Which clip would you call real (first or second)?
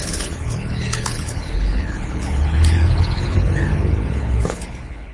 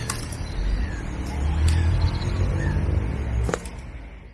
second